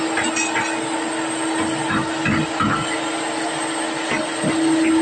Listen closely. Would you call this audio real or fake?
real